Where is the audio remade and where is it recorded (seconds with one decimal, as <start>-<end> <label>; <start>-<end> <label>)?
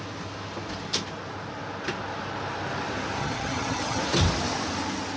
0.0-3.2 recorded; 3.2-4.0 remade; 4.0-5.2 recorded